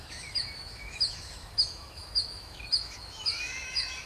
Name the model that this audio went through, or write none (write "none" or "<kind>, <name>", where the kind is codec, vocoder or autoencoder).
autoencoder, DAC-VAE